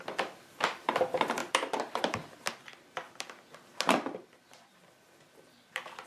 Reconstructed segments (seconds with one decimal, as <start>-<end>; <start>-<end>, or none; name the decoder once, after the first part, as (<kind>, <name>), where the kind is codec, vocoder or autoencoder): none

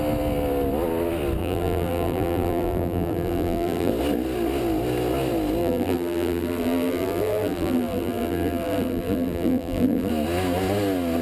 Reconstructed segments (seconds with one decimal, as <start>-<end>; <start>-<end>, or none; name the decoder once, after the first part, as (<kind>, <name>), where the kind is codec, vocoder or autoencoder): 1.4-3.9 (vocoder, BigVGAN v2); 5.6-10.1

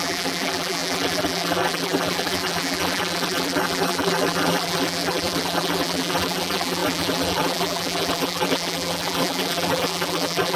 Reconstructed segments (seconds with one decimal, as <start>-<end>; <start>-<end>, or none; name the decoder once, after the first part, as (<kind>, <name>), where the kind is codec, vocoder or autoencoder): 0.0-10.6 (vocoder, BigVGAN v2)

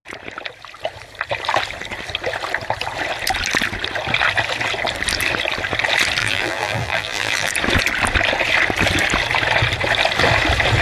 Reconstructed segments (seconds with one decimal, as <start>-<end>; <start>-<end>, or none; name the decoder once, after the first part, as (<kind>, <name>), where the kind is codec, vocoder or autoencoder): 6.2-7.5 (vocoder, BigVGAN v2)

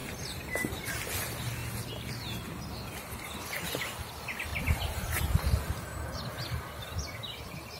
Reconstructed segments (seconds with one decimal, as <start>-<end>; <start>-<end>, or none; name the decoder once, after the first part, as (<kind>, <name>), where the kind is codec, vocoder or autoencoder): 0.0-1.0 (vocoder, BigVGAN v2); 4.5-6.6

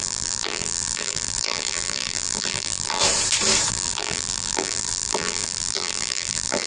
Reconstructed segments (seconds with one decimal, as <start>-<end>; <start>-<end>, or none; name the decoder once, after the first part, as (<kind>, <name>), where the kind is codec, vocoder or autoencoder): 0.0-3.0 (vocoder, BigVGAN v2); 3.7-6.7